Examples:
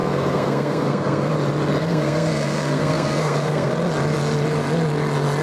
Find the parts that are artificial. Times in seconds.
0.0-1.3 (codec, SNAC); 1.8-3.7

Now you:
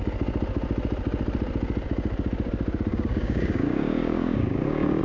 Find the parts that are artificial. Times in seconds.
2.9-5.0 (codec, DAC)